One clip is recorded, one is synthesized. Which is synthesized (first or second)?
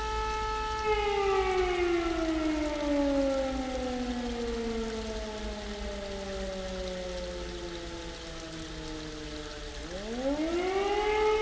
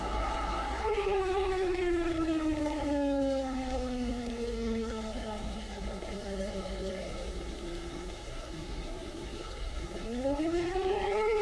second